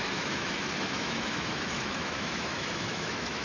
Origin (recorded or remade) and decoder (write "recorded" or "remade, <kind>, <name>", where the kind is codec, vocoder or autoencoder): remade, autoencoder, DAC-VAE